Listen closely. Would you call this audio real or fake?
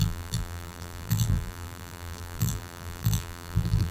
fake